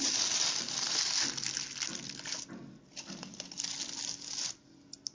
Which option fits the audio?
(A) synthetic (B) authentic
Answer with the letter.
B